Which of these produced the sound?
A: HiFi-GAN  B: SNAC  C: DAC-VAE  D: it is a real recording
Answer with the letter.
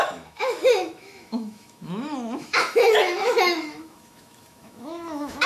C